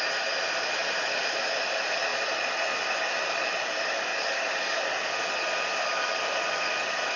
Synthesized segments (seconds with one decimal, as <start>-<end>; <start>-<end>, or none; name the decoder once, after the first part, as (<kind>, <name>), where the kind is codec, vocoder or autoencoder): none